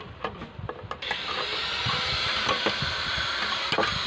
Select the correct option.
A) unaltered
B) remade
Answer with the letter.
A